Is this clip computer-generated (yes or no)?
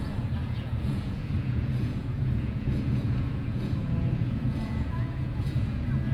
yes